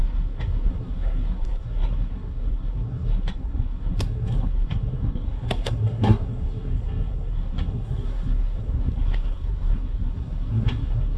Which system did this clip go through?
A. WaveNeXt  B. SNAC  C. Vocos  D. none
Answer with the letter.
B